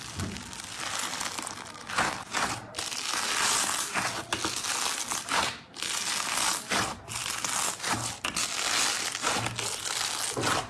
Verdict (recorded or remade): recorded